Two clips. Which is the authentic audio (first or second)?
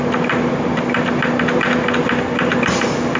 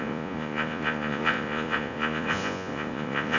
first